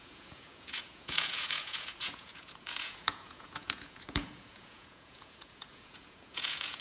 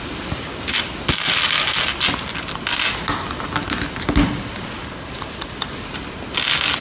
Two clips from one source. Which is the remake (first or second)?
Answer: first